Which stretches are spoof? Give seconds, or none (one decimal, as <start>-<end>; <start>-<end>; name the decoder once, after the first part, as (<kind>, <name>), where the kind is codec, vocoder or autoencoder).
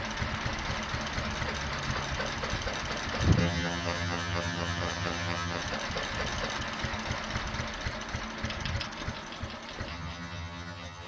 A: 3.4-5.6 (vocoder, HiFi-GAN); 9.9-11.1